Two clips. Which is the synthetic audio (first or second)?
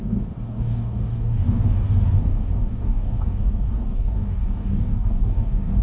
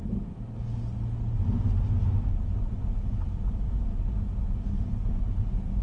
first